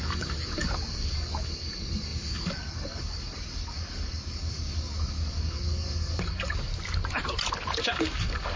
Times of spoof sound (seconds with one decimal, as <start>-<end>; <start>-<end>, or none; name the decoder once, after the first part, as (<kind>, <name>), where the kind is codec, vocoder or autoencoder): 0.0-6.7 (codec, DAC); 7.8-8.6